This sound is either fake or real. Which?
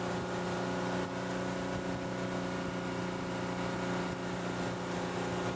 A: real